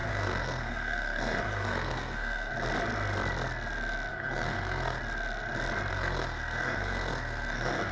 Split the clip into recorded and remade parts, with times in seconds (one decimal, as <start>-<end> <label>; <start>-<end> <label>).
0.0-2.5 remade; 2.5-4.1 recorded; 4.1-5.0 remade; 5.0-5.9 recorded; 5.9-7.9 remade